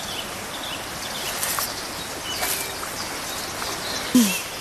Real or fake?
real